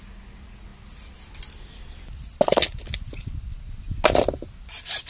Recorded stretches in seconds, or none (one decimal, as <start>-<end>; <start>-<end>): 0.0-5.1